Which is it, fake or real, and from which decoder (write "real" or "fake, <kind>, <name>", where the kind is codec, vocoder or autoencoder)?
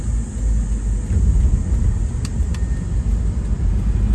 real